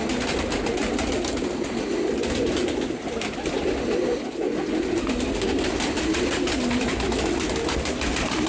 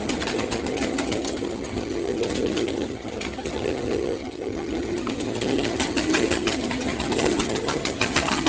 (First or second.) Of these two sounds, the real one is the first